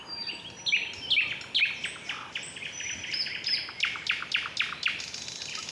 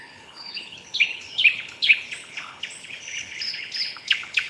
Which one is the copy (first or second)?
second